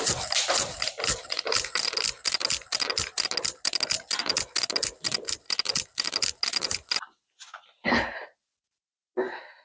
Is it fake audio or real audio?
real